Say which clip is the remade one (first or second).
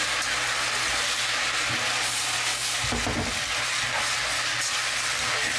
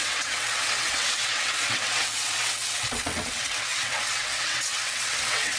second